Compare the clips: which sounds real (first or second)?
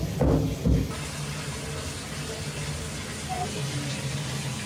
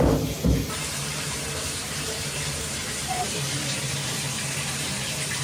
first